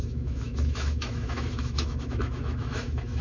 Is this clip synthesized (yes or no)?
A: yes